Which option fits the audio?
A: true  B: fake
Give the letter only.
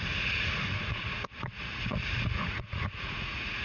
B